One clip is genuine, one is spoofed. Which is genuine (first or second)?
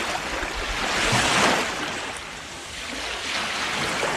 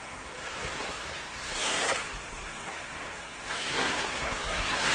first